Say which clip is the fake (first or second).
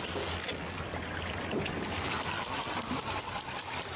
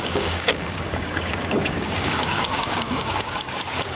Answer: second